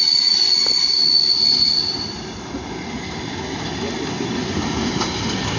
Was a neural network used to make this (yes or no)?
no